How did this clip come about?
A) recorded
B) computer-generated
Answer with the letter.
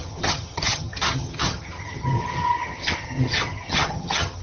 B